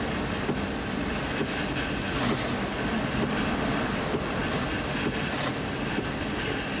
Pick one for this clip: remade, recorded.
recorded